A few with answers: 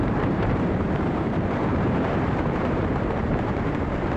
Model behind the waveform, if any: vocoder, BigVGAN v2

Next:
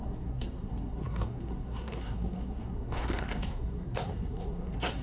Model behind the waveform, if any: codec, SNAC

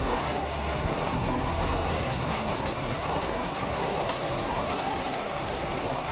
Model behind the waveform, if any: codec, SNAC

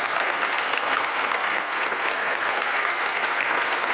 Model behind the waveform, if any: codec, SNAC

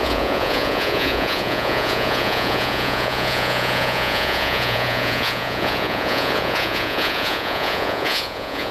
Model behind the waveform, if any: vocoder, Vocos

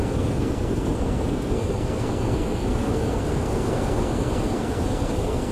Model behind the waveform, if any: codec, SNAC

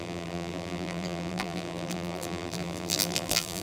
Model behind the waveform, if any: vocoder, BigVGAN v2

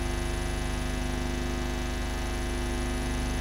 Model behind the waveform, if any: none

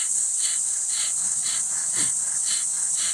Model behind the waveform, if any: none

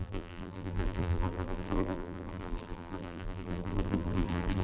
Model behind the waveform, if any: vocoder, BigVGAN v2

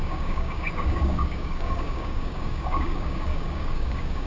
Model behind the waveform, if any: codec, DAC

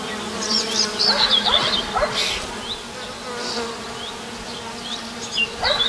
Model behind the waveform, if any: none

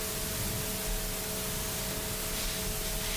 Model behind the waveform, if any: none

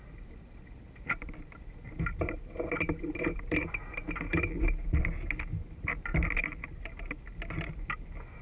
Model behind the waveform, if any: none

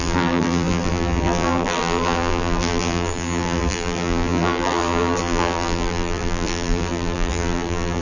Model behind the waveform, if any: vocoder, BigVGAN v2